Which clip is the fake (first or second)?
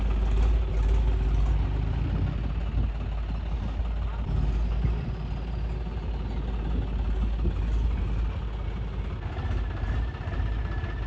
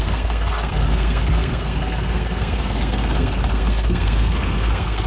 second